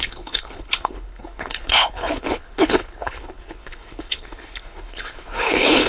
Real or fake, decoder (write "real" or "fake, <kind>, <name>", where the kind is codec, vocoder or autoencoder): fake, codec, HILCodec